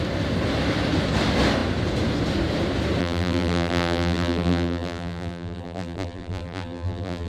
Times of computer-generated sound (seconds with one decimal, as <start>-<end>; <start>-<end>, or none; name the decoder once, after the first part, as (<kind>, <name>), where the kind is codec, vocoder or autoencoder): 3.0-7.3 (vocoder, BigVGAN v2)